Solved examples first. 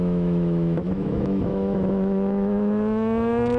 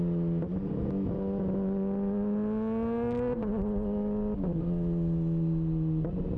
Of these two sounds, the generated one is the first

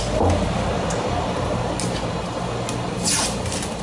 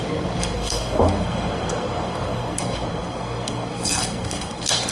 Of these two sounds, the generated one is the second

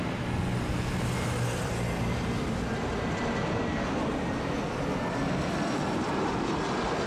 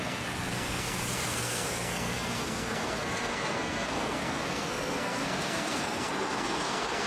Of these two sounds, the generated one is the second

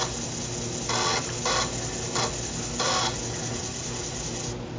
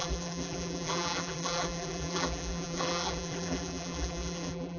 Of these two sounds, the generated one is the second